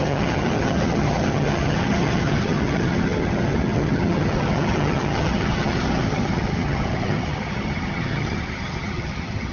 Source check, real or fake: fake